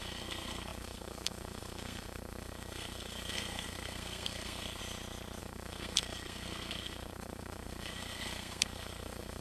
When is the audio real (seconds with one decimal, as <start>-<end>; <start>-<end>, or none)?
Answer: 4.8-5.4